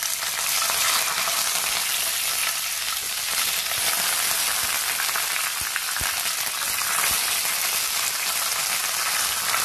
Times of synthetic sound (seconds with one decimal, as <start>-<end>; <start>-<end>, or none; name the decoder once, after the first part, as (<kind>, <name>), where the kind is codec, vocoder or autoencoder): none